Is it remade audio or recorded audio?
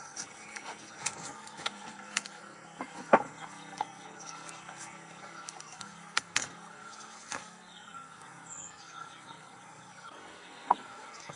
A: remade